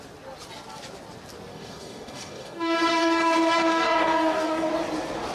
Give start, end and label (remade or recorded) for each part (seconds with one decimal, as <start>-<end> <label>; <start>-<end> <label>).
0.0-1.5 recorded; 1.5-4.7 remade; 4.7-5.3 recorded